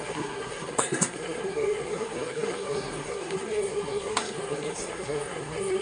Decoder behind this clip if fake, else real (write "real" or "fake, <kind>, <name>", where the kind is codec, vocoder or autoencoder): fake, codec, SNAC